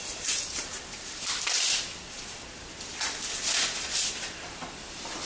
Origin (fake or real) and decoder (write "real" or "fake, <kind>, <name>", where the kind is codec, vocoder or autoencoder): real